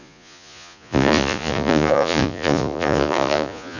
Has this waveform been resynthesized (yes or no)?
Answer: yes